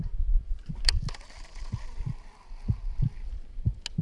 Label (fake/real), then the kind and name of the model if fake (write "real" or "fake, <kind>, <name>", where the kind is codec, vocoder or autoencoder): real